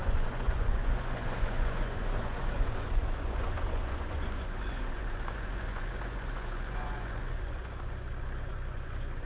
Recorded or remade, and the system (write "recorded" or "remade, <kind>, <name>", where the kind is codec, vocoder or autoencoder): remade, vocoder, Vocos